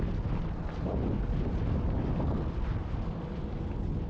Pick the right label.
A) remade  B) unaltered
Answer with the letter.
B